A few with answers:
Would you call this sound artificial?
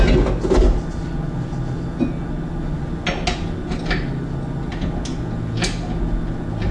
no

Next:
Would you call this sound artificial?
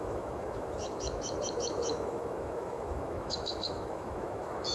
yes